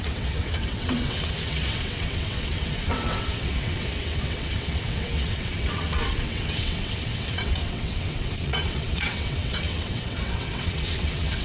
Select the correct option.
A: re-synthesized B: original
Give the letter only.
A